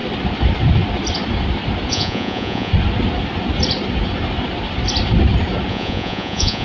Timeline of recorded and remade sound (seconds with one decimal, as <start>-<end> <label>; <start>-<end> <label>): 0.0-1.9 recorded; 1.9-2.7 remade; 2.7-5.7 recorded; 5.7-6.6 remade